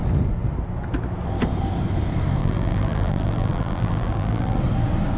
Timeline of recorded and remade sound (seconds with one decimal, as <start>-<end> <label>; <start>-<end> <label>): 0.0-2.4 recorded; 2.4-4.6 remade; 4.6-5.2 recorded